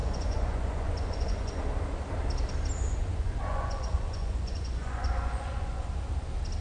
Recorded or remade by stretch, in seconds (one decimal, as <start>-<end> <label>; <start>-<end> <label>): 0.0-1.6 remade; 1.6-3.0 recorded; 3.0-5.8 remade; 5.8-6.6 recorded